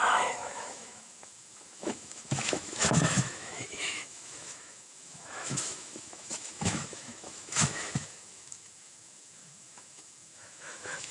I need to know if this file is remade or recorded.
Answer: remade